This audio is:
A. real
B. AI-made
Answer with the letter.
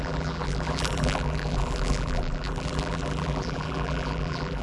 B